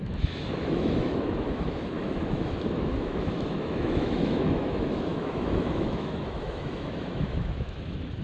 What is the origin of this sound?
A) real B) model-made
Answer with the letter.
B